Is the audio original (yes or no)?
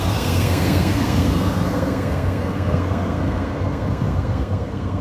no